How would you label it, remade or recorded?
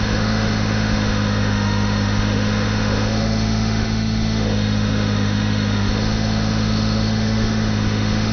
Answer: remade